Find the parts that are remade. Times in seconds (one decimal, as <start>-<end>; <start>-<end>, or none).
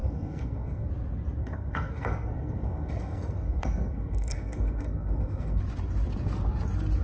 0.0-0.9; 1.4-5.6